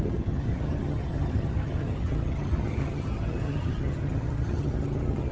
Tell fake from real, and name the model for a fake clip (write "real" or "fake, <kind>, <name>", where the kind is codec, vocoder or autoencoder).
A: fake, vocoder, HiFi-GAN